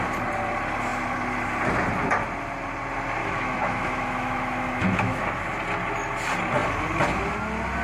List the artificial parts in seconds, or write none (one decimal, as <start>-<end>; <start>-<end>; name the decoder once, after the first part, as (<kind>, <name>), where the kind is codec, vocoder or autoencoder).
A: 3.2-5.4 (autoencoder, DAC-VAE)